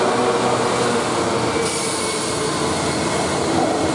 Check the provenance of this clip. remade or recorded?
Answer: recorded